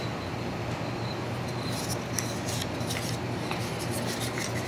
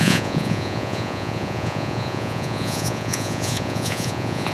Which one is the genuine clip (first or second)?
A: first